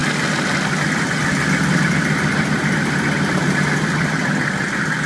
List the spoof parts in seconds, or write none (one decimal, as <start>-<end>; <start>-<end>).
none